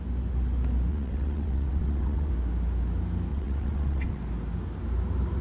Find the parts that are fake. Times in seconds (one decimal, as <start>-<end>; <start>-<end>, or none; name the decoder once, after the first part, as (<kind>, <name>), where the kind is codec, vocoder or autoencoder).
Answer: 0.9-2.3 (vocoder, WaveNeXt); 3.3-4.2

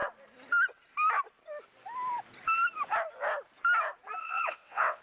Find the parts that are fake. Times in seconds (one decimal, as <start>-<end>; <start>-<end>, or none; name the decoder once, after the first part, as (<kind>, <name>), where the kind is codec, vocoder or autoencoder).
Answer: 4.2-5.0 (vocoder, WaveNeXt)

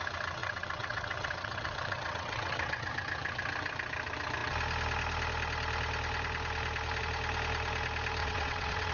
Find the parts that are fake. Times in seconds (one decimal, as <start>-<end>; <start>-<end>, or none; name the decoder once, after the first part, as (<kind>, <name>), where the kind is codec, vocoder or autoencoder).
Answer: 0.4-2.9 (vocoder, WaveNeXt); 8.2-8.9

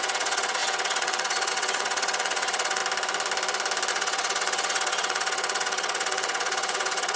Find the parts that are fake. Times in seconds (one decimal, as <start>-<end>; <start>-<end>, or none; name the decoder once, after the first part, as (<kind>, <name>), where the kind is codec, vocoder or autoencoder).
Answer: 0.0-2.8 (vocoder, WaveNeXt); 3.9-7.2

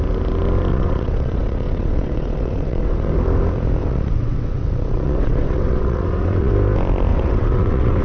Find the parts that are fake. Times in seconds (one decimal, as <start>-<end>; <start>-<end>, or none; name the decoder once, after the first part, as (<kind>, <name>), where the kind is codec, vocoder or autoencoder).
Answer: 0.7-3.1 (vocoder, WaveNeXt); 3.8-6.5; 7.1-8.0

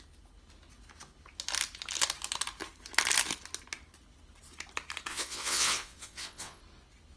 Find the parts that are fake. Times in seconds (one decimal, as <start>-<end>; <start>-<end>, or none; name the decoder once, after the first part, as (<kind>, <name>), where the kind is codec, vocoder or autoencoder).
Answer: 5.1-6.6 (vocoder, WaveNeXt)